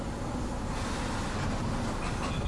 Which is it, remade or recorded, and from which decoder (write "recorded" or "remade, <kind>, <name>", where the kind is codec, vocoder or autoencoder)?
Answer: recorded